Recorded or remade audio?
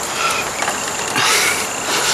recorded